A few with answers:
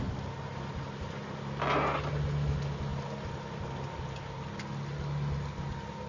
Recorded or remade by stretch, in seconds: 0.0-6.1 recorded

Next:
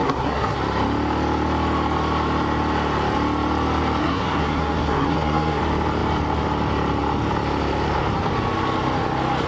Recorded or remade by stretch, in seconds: 0.0-0.6 remade; 0.6-4.0 recorded; 4.0-5.6 remade; 5.6-9.5 recorded

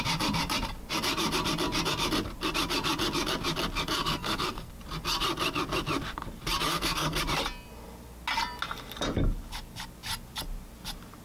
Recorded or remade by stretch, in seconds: 0.0-4.0 recorded; 4.0-4.7 remade; 4.7-6.7 recorded; 6.7-7.2 remade; 7.2-11.2 recorded

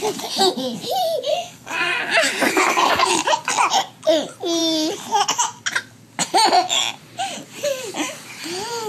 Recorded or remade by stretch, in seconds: 0.0-1.3 recorded; 1.3-2.0 remade; 2.0-2.5 recorded; 2.5-3.1 remade; 3.1-8.9 recorded